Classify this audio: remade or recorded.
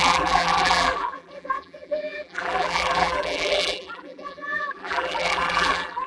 remade